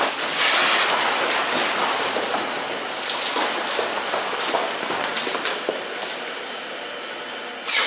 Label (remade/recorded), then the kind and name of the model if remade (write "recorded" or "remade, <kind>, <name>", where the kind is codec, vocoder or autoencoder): recorded